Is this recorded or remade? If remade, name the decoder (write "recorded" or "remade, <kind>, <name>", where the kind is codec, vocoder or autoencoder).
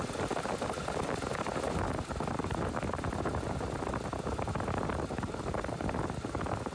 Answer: recorded